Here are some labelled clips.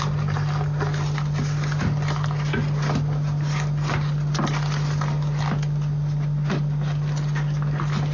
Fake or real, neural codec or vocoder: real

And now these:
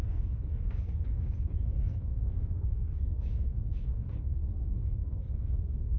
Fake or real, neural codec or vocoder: fake, codec, SNAC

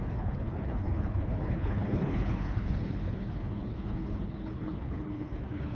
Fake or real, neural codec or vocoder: fake, codec, HILCodec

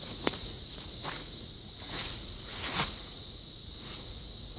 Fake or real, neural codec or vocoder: fake, vocoder, Vocos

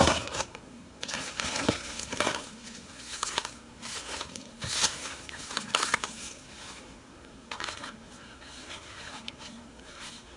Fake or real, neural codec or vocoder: fake, codec, SNAC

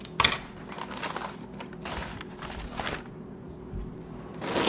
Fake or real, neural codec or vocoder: real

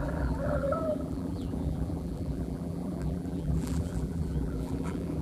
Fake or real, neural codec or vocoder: fake, vocoder, BigVGAN v2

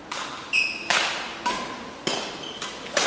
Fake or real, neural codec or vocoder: real